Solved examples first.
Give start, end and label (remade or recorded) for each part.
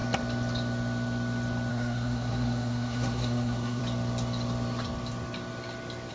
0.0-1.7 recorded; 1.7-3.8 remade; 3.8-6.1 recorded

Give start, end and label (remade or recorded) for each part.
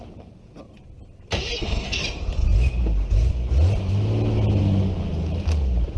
0.0-1.5 recorded; 1.5-2.0 remade; 2.0-6.0 recorded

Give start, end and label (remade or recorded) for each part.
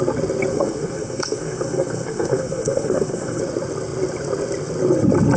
0.0-0.5 recorded; 0.5-3.4 remade; 3.4-5.4 recorded